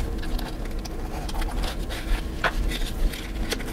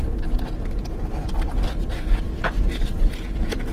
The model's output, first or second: second